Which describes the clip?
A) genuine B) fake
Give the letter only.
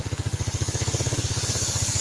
B